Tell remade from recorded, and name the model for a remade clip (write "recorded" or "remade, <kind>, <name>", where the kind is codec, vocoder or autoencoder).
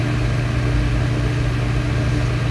recorded